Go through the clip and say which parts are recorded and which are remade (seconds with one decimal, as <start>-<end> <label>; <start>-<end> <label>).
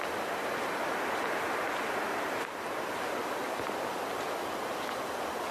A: 0.0-5.5 recorded